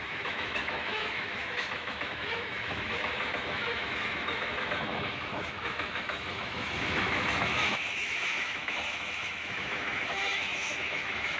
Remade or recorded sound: remade